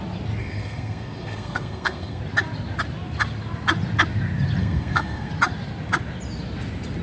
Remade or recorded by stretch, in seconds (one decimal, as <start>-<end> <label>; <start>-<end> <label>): 0.0-0.4 recorded; 0.4-2.2 remade; 2.2-4.6 recorded; 4.6-5.3 remade; 5.3-7.0 recorded

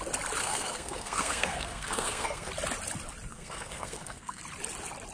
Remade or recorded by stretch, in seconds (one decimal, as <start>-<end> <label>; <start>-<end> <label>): 0.0-0.4 recorded; 0.4-2.5 remade; 2.5-3.3 recorded; 3.3-4.4 remade; 4.4-5.1 recorded

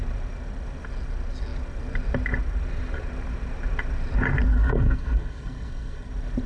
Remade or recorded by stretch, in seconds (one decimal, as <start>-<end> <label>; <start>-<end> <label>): 0.0-4.5 recorded; 4.5-6.1 remade; 6.1-6.5 recorded